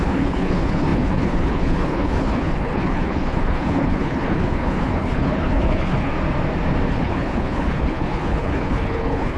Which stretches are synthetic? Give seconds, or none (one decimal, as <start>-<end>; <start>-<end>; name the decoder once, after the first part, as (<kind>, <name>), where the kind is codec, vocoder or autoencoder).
0.0-6.1 (codec, HILCodec); 6.9-9.4